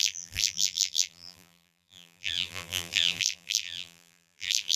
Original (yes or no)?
no